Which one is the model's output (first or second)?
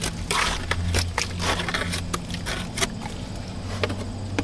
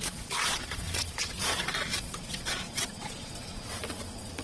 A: second